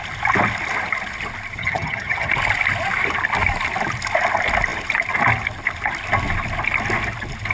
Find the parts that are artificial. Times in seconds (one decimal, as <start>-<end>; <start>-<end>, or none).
1.6-2.3